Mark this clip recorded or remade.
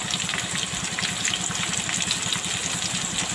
recorded